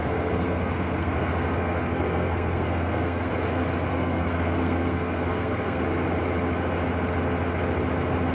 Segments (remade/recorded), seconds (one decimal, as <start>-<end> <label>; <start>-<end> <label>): 0.0-3.3 remade; 3.3-3.9 recorded; 3.9-5.8 remade; 5.8-8.3 recorded

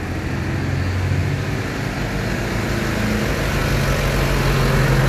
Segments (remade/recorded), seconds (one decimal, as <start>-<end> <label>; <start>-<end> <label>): 0.0-5.1 recorded